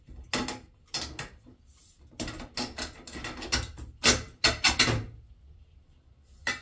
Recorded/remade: recorded